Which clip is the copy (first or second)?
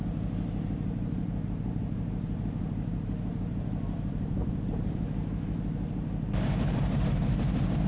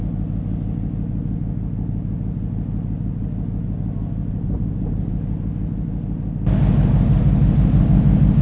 first